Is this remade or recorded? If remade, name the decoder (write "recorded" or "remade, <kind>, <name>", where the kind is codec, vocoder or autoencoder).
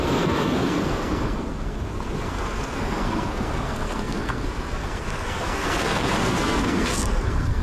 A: remade, codec, SNAC